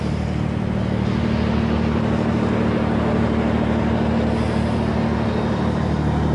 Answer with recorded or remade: recorded